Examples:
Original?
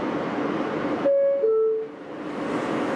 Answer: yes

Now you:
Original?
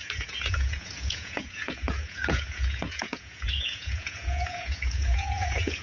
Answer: no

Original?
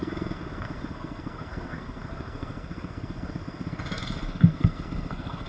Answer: no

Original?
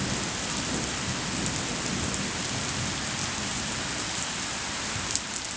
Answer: yes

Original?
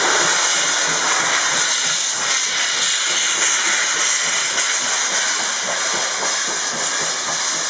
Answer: yes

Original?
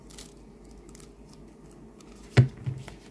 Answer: yes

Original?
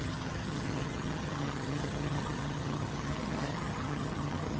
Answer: no